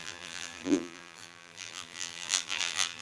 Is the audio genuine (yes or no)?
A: no